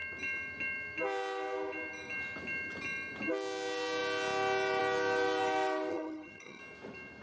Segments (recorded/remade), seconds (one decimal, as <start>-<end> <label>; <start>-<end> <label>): 0.0-5.9 recorded; 5.9-6.6 remade; 6.6-7.2 recorded